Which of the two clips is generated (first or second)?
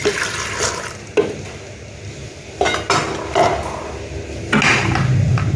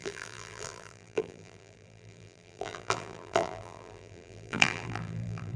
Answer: second